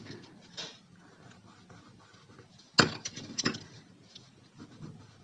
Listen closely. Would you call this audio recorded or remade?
recorded